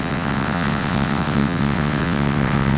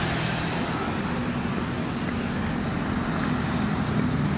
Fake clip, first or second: first